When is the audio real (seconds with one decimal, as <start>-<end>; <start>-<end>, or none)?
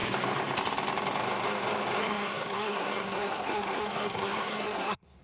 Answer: 0.0-2.0